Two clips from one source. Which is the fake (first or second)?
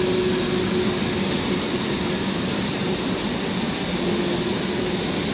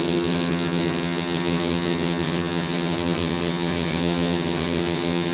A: second